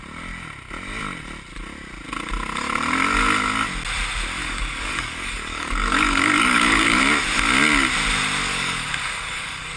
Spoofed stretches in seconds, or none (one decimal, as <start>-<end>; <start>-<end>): 4.4-7.0; 8.5-9.8